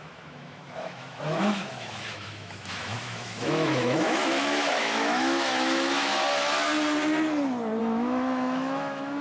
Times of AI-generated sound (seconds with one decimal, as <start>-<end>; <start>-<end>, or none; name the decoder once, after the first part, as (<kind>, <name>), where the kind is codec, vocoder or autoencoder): 0.0-6.1 (autoencoder, DAC-VAE); 7.8-9.2